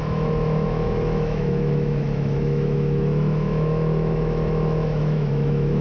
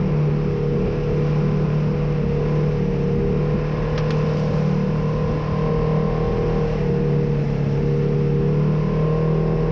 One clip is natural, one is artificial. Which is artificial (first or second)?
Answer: first